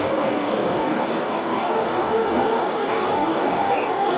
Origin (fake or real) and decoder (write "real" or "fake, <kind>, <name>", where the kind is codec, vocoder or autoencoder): fake, codec, DAC